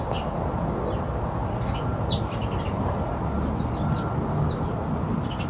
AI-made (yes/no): no